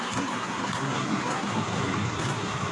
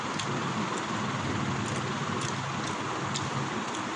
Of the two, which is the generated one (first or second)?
first